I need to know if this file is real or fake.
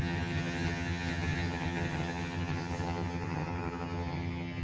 fake